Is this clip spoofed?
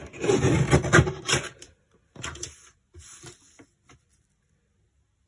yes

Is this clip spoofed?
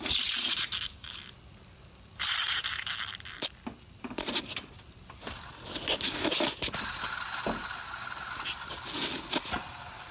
no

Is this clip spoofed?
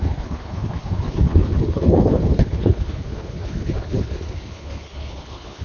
yes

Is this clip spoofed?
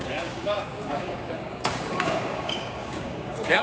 yes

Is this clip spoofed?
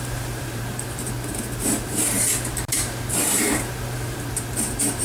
yes